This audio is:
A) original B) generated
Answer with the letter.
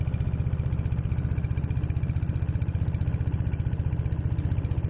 A